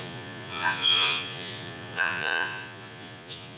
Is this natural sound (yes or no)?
no